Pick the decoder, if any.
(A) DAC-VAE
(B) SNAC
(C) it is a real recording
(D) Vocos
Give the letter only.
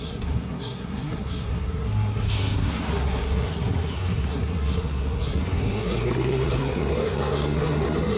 B